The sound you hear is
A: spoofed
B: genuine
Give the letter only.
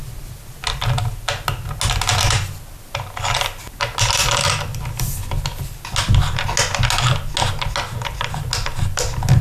B